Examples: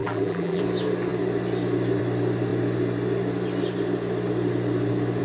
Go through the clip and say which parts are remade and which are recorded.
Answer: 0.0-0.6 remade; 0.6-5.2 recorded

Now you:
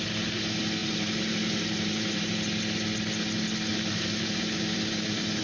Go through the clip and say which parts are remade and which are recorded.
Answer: 0.0-0.8 recorded; 0.8-2.2 remade; 2.2-3.7 recorded; 3.7-5.4 remade

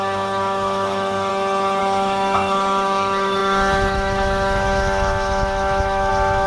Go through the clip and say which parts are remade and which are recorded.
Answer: 0.0-1.3 remade; 1.3-1.8 recorded; 1.8-6.5 remade

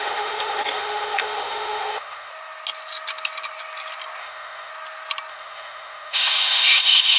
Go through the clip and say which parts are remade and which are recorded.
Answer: 0.0-2.3 remade; 2.3-4.2 recorded; 4.2-4.7 remade; 4.7-5.3 recorded; 5.3-7.2 remade